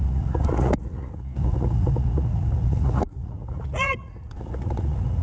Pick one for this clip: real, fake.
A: fake